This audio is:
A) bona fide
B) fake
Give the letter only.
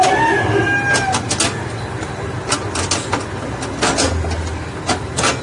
A